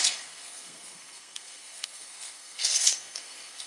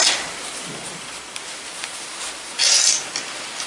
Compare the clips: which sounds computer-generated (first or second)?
first